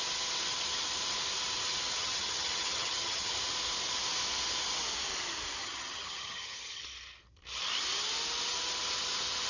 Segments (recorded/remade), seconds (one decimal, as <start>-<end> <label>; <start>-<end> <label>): 0.0-2.0 recorded; 2.0-3.3 remade; 3.3-5.6 recorded; 5.6-6.8 remade; 6.8-9.5 recorded